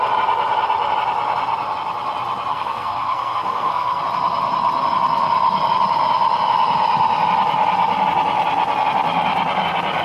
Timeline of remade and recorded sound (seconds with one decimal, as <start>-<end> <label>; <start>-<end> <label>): 0.0-2.5 recorded; 2.5-4.0 remade; 4.0-10.0 recorded